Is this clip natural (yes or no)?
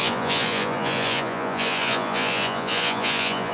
no